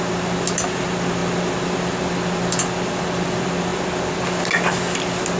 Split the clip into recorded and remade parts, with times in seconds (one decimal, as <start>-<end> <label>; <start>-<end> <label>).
0.0-5.4 recorded